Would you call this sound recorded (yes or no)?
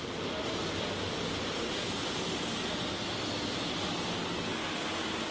yes